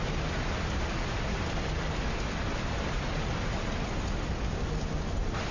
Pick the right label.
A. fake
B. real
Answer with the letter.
B